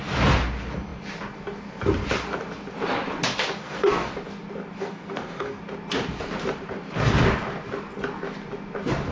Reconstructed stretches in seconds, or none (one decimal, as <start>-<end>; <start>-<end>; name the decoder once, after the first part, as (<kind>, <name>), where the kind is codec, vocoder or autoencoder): 3.6-4.1 (codec, SNAC); 4.8-5.6